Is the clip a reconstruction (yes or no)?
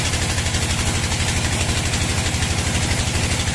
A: no